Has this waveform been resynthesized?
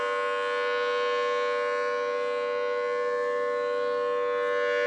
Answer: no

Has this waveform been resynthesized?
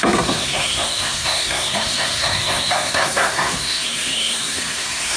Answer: yes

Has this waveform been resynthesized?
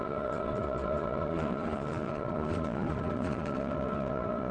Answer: yes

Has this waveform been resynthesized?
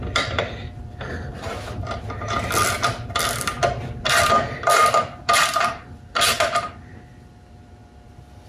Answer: yes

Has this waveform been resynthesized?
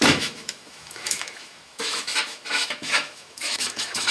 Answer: yes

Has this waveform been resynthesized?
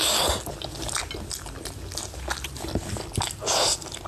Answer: no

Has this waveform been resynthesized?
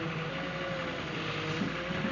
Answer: no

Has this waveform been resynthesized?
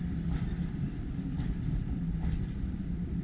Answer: no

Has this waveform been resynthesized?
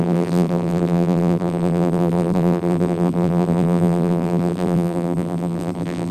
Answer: yes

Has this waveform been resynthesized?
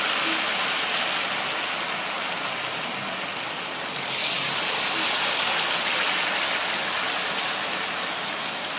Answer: no